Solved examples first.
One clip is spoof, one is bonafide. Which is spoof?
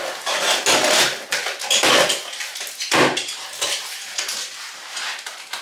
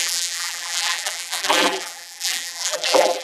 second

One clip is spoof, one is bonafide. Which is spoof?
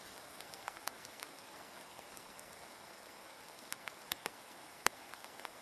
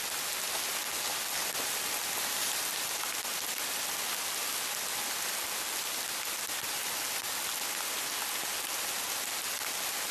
first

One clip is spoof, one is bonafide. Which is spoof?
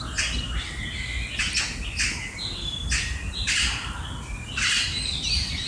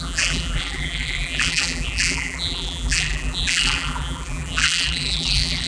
second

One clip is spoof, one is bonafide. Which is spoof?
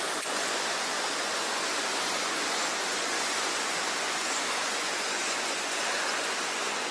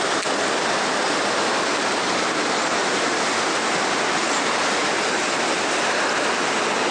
first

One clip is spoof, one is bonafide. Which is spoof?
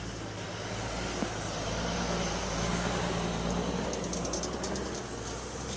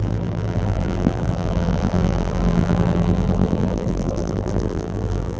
second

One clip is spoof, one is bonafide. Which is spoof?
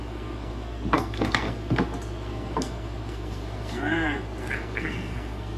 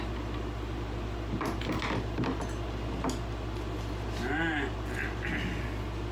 first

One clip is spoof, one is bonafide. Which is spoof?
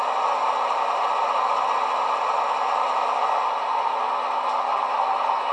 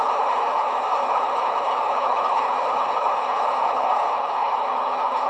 second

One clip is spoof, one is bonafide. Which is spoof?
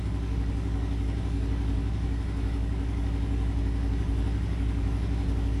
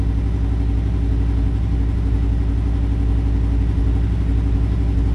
first